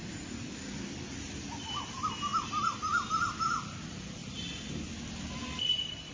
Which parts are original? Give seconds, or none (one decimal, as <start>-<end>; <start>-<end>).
2.3-3.1; 4.2-5.3

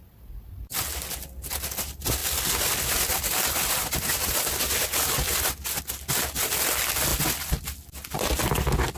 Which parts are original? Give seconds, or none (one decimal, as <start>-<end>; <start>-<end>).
0.0-9.0

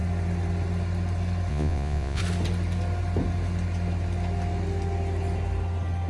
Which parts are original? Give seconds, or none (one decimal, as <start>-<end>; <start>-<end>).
0.0-1.5; 2.2-6.1